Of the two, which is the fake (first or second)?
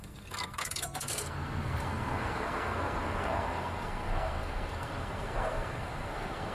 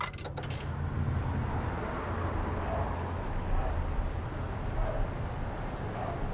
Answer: first